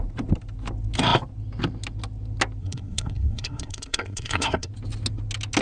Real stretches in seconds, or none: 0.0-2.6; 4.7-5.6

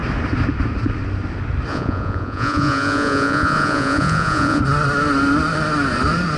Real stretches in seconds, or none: 0.0-1.7; 4.6-6.4

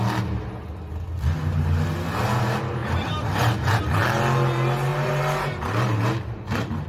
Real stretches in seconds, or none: 0.0-2.8; 3.8-4.9

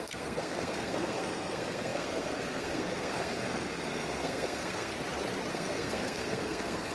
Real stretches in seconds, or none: 4.9-5.5